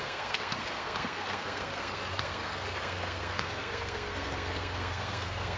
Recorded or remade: remade